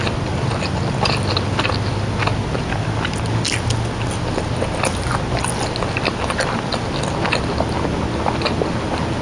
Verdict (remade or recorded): recorded